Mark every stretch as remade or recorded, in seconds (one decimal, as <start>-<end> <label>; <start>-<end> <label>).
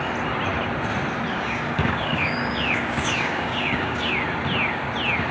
0.0-1.3 recorded; 1.3-4.1 remade; 4.1-5.3 recorded